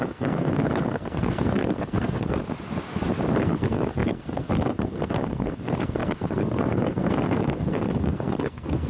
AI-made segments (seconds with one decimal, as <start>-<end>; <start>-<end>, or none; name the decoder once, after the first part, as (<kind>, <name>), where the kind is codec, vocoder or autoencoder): 0.0-2.4 (codec, SNAC); 3.4-8.9